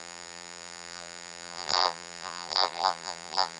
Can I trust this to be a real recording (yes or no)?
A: no